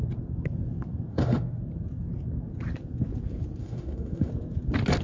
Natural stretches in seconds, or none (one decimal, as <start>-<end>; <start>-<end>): 0.0-1.1; 1.6-3.6; 4.3-5.0